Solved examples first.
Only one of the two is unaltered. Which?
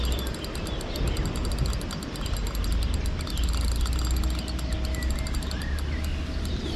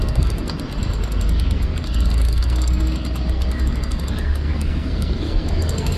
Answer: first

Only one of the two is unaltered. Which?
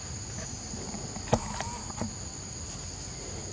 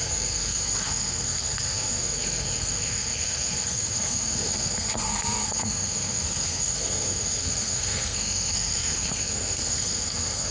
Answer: first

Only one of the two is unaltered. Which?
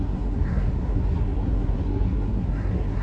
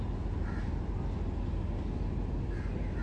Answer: second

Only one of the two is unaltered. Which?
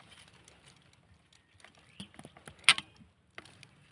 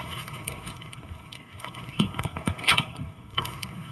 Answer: first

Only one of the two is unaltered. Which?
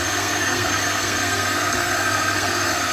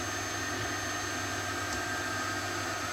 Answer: second